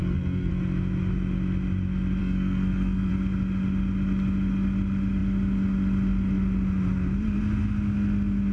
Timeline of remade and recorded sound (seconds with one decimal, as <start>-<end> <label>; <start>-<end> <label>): 0.0-0.5 remade; 0.5-2.2 recorded; 2.2-3.1 remade; 3.1-8.5 recorded